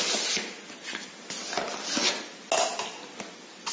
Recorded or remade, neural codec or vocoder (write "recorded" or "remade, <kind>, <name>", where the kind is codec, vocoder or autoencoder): recorded